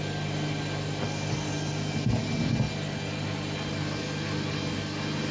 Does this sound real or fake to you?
real